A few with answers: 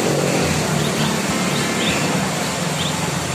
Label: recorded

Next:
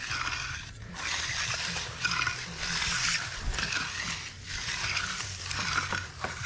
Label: recorded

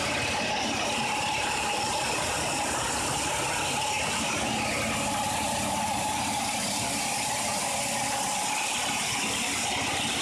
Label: recorded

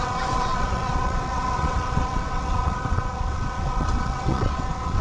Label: remade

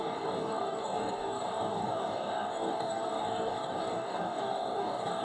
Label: remade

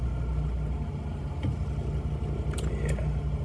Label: recorded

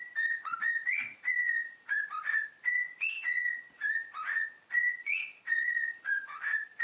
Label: remade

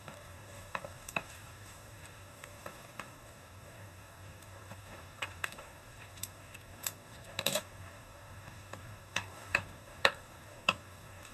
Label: remade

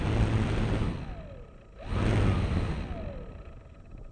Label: recorded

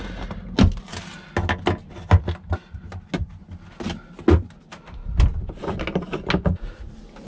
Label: recorded